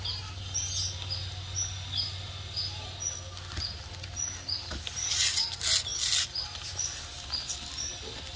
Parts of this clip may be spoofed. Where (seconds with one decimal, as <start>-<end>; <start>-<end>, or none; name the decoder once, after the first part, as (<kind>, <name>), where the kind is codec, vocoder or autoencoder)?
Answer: none